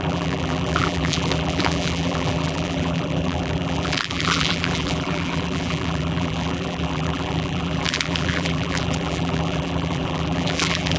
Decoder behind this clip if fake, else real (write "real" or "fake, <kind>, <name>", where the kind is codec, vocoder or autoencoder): fake, vocoder, BigVGAN v2